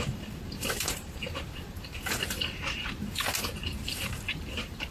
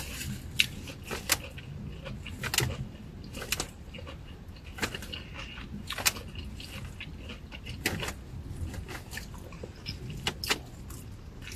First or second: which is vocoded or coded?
first